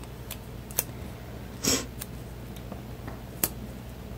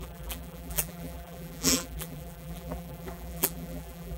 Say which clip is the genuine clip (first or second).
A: first